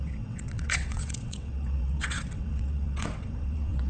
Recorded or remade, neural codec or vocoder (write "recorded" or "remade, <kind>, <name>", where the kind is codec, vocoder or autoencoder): remade, vocoder, WaveNeXt